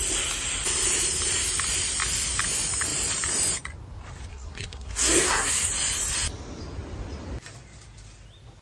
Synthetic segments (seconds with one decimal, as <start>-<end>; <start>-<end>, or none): 4.3-5.7